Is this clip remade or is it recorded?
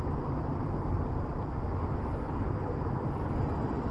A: recorded